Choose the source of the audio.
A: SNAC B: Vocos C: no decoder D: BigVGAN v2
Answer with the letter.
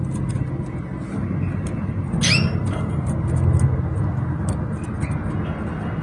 C